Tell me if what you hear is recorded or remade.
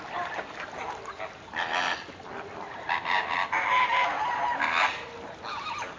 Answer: recorded